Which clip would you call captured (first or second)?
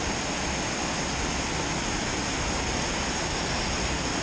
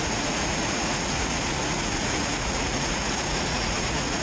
first